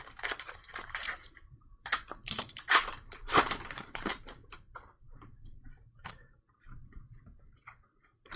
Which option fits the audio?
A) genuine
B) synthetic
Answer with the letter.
B